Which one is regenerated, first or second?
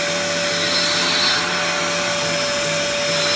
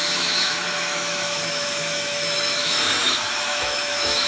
second